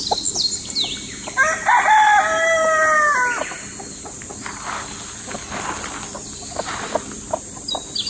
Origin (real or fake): real